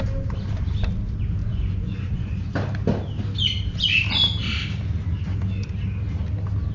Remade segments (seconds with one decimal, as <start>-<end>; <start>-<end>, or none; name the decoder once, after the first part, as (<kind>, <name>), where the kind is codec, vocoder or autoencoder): 1.4-2.5 (vocoder, Vocos)